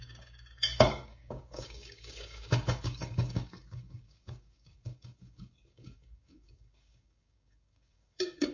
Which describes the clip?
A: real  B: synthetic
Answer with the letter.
B